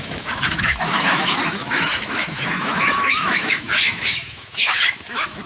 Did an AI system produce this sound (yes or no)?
yes